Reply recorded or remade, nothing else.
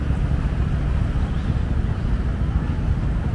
recorded